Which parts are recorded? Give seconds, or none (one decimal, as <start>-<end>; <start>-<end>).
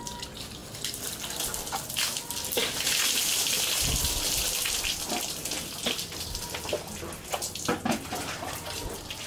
0.0-9.3